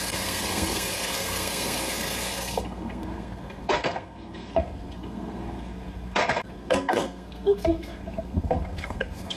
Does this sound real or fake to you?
fake